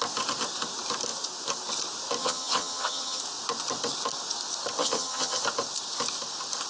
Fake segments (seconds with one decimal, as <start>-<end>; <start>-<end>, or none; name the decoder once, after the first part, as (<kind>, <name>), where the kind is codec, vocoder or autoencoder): 2.2-3.2 (vocoder, HiFi-GAN); 4.8-5.4